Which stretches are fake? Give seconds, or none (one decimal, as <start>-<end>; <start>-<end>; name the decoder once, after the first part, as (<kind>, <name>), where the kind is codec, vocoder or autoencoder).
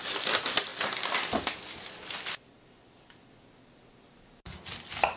none